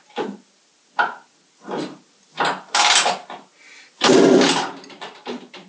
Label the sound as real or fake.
real